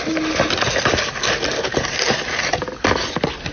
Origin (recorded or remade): recorded